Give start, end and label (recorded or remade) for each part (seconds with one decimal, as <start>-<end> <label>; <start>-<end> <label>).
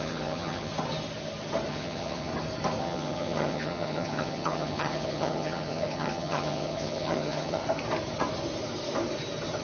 0.0-0.7 remade; 0.7-1.7 recorded; 1.7-2.3 remade; 2.3-2.8 recorded; 2.8-7.6 remade; 7.6-9.6 recorded